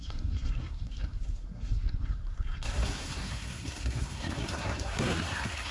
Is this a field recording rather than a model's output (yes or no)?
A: no